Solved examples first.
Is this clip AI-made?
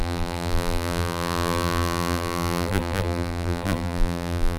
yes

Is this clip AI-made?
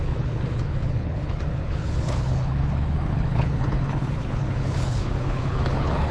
yes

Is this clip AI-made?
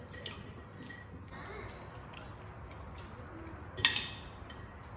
no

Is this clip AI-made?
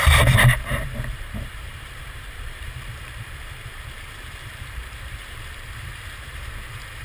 yes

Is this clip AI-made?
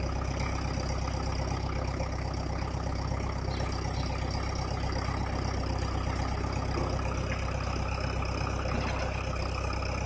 no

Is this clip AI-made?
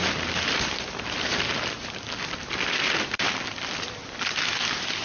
yes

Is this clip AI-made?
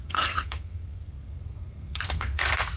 yes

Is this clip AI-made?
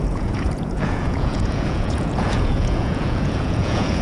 yes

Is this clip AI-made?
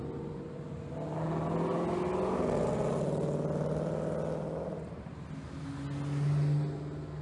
no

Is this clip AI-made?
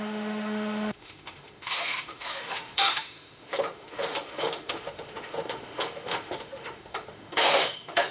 yes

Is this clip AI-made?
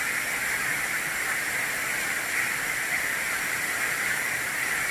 no